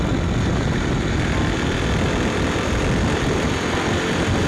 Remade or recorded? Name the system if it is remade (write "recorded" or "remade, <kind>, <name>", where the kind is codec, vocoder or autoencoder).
recorded